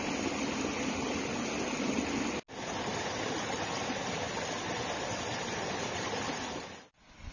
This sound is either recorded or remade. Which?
recorded